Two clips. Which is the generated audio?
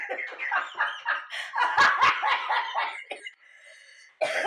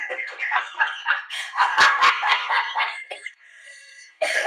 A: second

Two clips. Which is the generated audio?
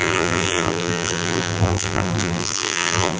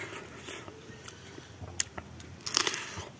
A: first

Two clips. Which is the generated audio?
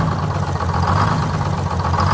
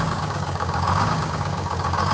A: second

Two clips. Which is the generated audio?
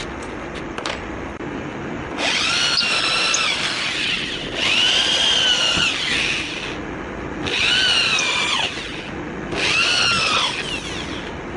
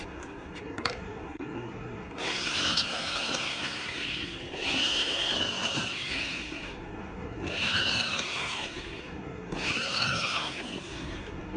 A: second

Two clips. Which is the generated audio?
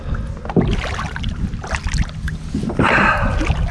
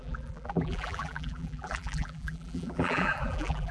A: second